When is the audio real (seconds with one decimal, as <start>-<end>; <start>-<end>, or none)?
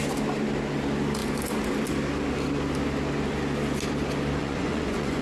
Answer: 0.0-4.4